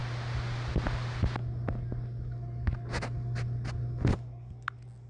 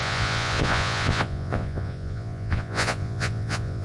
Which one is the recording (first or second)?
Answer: first